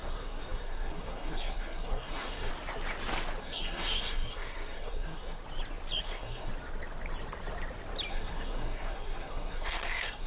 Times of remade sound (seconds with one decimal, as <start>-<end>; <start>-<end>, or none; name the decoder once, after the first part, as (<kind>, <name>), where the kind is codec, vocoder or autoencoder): 0.0-2.5 (codec, SNAC); 3.4-5.4; 6.0-6.5; 8.1-10.3